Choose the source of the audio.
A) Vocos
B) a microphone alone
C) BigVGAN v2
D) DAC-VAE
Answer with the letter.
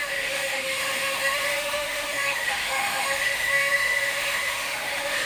D